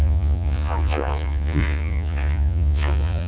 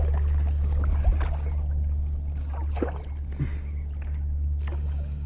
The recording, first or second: second